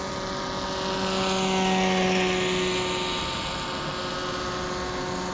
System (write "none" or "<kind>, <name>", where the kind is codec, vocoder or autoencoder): none